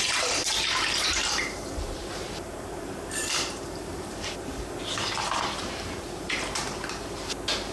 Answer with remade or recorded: remade